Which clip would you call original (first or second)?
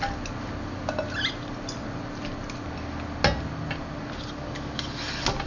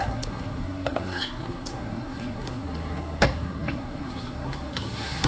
first